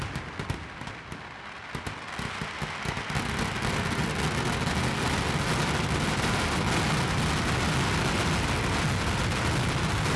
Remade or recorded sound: recorded